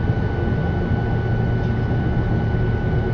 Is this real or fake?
real